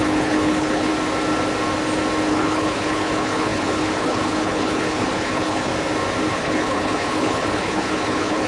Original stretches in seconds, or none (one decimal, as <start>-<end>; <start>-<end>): 0.9-2.3; 5.7-6.3